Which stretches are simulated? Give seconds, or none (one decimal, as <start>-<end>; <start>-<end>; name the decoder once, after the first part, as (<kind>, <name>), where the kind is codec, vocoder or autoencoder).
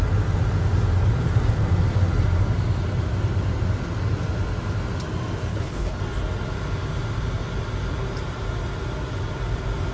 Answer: 5.5-6.0 (codec, HILCodec)